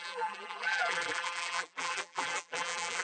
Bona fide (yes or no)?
no